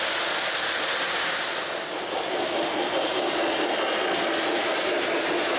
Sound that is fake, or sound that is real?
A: real